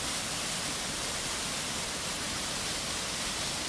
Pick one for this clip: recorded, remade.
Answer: recorded